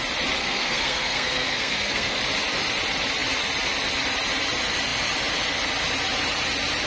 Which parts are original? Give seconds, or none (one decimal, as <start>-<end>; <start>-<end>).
0.0-0.4; 2.2-6.9